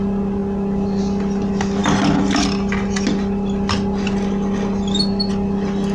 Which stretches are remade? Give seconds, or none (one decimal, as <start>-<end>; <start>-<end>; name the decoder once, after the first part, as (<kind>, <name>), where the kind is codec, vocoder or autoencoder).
none